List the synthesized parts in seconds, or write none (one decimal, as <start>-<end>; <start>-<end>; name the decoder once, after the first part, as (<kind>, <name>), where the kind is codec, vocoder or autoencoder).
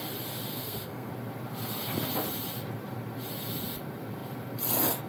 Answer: 0.5-1.1 (codec, SNAC)